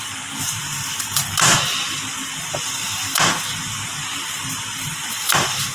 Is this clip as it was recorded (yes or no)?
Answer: no